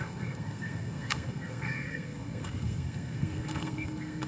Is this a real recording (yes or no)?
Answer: no